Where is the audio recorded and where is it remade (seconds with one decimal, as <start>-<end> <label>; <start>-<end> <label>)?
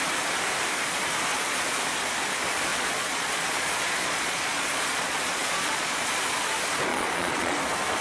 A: 0.0-1.3 recorded; 1.3-1.8 remade; 1.8-2.7 recorded; 2.7-6.1 remade; 6.1-6.9 recorded; 6.9-7.6 remade; 7.6-8.0 recorded